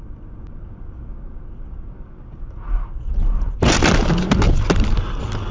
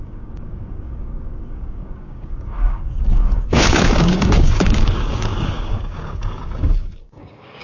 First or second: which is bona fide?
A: first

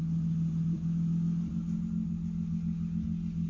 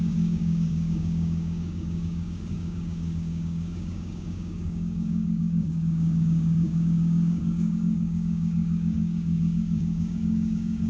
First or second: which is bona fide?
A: first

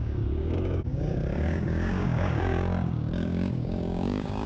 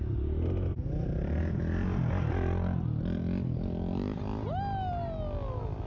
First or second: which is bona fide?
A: second